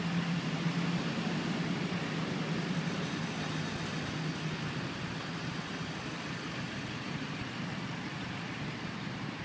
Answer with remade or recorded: recorded